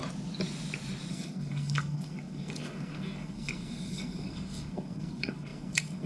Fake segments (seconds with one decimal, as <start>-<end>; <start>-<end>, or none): 1.1-6.1